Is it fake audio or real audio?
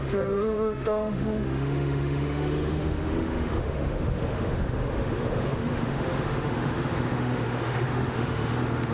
fake